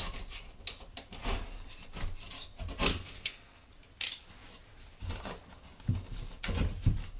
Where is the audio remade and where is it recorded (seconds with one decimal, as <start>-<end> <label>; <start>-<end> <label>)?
0.0-2.9 recorded; 2.9-3.7 remade; 3.7-7.2 recorded